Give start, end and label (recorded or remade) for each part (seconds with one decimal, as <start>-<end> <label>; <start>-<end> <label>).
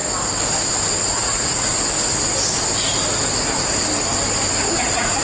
0.0-1.0 recorded; 1.0-1.7 remade; 1.7-4.8 recorded; 4.8-5.2 remade